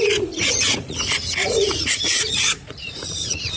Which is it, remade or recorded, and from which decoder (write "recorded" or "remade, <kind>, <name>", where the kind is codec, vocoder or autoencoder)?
remade, vocoder, Vocos